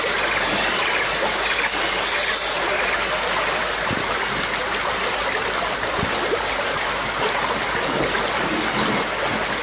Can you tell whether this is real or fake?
real